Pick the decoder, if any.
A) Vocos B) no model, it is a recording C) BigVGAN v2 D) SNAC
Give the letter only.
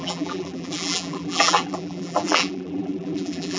C